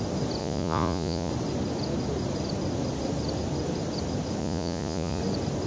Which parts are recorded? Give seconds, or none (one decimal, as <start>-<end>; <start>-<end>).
0.0-0.4; 1.3-4.4; 5.2-5.7